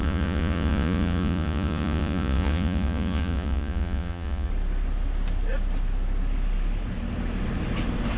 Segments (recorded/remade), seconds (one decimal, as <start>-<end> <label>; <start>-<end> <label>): 0.0-4.5 remade; 4.5-8.2 recorded